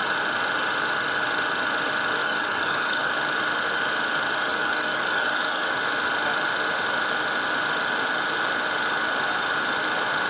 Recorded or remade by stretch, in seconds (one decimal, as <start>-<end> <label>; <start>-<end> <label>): 0.0-2.2 recorded; 2.2-3.1 remade; 3.1-4.5 recorded; 4.5-5.7 remade; 5.7-10.3 recorded